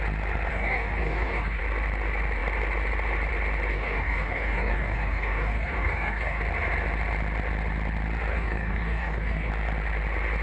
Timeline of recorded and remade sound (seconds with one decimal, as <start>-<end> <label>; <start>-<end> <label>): 0.0-0.5 recorded; 0.5-1.6 remade; 1.6-3.7 recorded; 3.7-6.4 remade; 6.4-8.3 recorded; 8.3-9.5 remade; 9.5-10.4 recorded